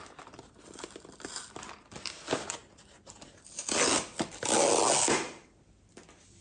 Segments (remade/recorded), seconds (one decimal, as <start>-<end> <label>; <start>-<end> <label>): 0.0-6.4 recorded